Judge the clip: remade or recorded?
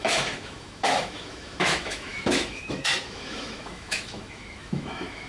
remade